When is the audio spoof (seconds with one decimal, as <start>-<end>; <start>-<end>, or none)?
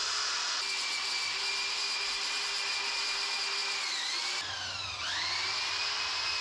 none